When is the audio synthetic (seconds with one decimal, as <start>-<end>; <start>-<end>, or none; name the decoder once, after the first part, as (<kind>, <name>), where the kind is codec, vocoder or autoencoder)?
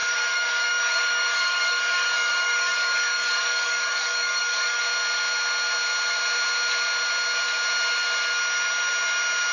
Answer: 0.0-4.8 (codec, DAC)